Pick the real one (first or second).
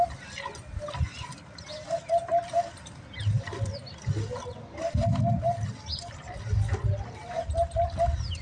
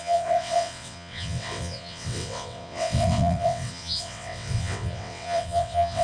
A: first